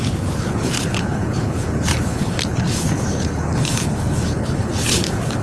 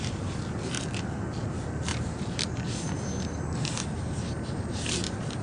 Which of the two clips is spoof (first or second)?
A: first